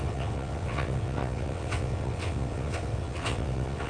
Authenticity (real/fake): fake